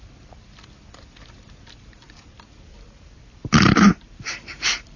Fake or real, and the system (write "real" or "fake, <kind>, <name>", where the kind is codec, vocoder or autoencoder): fake, vocoder, BigVGAN v2